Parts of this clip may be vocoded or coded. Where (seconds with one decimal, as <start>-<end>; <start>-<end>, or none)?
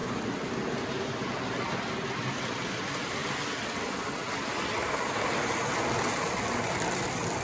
none